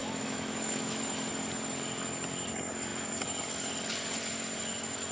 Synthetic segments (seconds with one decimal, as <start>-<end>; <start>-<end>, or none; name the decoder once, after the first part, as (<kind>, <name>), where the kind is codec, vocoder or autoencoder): 0.0-1.0 (autoencoder, DAC-VAE)